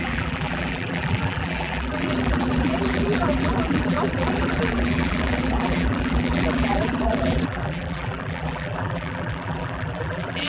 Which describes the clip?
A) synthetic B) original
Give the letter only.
A